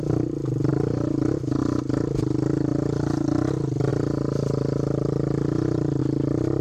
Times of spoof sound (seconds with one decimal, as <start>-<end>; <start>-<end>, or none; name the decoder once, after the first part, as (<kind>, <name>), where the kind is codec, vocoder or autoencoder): none